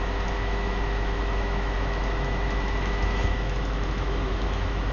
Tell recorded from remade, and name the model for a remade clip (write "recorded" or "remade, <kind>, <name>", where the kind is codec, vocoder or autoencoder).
remade, autoencoder, DAC-VAE